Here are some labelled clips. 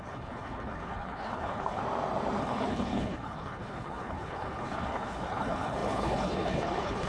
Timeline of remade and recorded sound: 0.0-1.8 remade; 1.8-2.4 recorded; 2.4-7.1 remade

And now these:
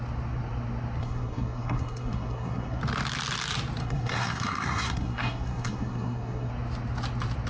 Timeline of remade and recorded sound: 0.0-1.0 recorded; 1.0-2.8 remade; 2.8-3.8 recorded; 3.8-6.5 remade; 6.5-7.5 recorded

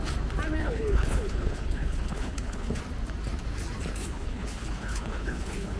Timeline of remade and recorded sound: 0.0-0.6 recorded; 0.6-2.8 remade; 2.8-4.0 recorded; 4.0-5.8 remade